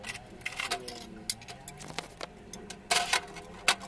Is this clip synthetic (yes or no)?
no